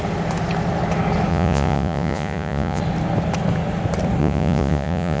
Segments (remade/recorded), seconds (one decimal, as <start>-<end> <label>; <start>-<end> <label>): 0.0-1.3 recorded; 1.3-2.8 remade; 2.8-4.2 recorded; 4.2-5.2 remade